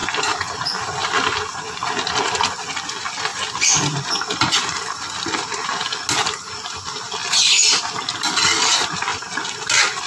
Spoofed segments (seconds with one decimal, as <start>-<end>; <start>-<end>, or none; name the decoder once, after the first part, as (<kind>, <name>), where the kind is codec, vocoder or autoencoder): 3.3-5.8 (vocoder, BigVGAN v2); 7.2-7.8; 9.1-9.6